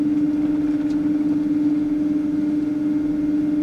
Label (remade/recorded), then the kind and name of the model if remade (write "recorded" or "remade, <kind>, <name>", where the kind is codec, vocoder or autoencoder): recorded